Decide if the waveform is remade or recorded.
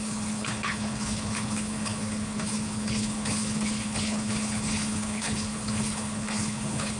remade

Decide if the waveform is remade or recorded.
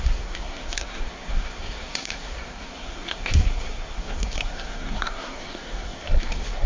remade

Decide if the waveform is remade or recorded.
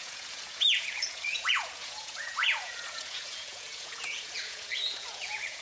remade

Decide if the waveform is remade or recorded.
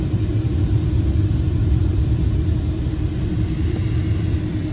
remade